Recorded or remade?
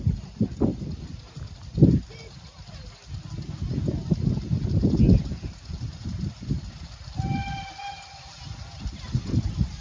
recorded